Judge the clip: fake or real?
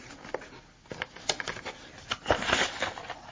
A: real